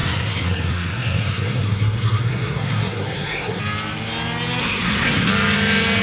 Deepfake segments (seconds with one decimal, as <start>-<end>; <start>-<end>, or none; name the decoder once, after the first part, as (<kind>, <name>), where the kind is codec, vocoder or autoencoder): 0.0-3.6 (codec, SNAC); 4.6-5.3